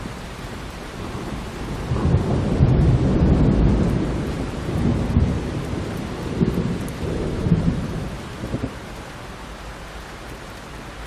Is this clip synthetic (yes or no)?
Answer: no